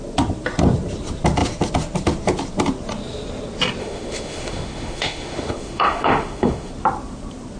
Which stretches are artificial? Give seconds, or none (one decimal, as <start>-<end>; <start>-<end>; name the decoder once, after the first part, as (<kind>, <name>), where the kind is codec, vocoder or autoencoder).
3.8-6.7 (autoencoder, DAC-VAE)